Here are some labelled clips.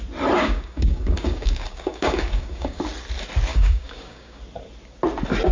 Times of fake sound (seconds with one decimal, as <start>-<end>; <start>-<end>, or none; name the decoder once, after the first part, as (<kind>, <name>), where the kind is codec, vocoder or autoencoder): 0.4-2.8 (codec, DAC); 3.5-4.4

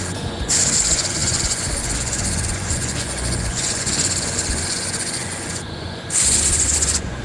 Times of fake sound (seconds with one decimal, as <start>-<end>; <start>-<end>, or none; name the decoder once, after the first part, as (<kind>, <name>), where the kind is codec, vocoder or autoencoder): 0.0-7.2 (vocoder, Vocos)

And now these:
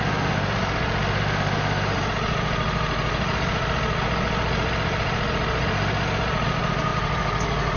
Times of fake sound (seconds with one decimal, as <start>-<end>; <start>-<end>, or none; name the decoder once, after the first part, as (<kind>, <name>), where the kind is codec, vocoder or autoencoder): none